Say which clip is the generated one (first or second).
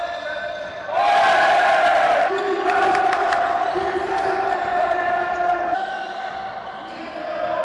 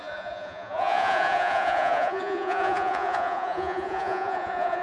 second